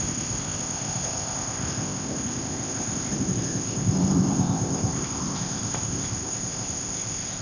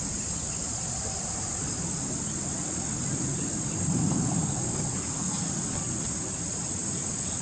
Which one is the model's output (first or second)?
first